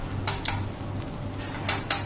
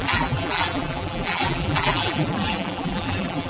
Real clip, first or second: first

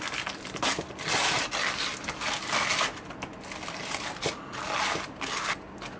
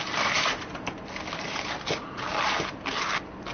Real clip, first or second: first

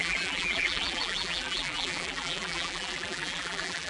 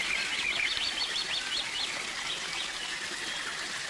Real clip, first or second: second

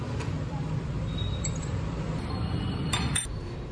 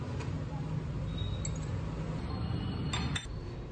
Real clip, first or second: second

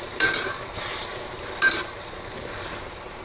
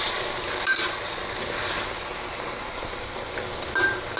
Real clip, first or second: second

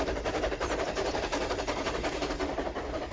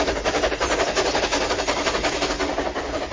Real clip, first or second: second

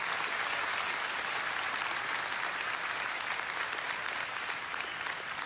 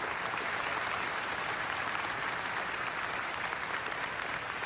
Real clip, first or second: first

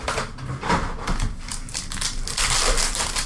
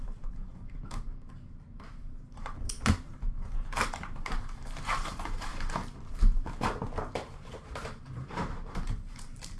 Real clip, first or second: first